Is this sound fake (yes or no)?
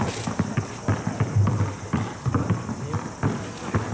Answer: no